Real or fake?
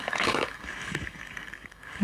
fake